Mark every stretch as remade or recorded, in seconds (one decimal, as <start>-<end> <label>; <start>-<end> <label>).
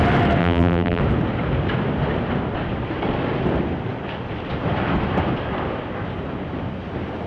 0.0-0.4 recorded; 0.4-1.0 remade; 1.0-7.3 recorded